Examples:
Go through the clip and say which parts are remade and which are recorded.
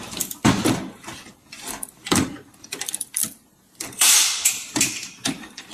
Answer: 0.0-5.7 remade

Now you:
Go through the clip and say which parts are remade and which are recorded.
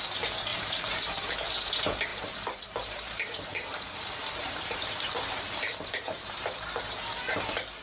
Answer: 0.0-0.5 recorded; 0.5-1.3 remade; 1.3-2.1 recorded; 2.1-6.8 remade; 6.8-7.8 recorded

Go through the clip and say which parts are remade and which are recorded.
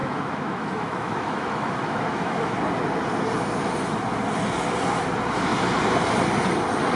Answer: 0.0-2.6 remade; 2.6-7.0 recorded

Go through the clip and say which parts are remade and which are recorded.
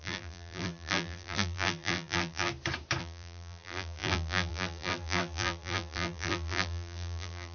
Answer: 0.0-2.5 remade; 2.5-3.0 recorded; 3.0-7.5 remade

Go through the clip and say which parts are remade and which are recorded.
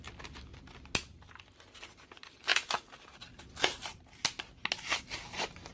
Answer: 0.0-5.7 recorded